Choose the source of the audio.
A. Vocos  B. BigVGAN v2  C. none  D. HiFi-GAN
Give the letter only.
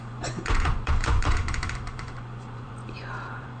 A